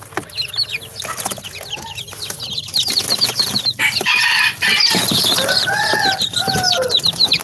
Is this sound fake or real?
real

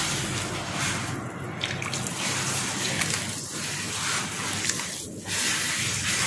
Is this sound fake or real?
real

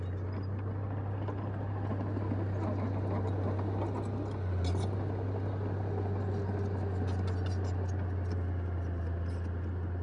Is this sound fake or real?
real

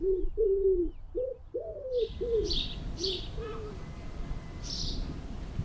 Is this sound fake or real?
fake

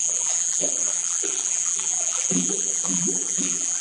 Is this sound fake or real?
fake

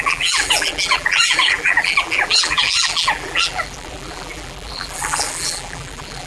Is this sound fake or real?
fake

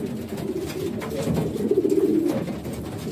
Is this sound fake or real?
real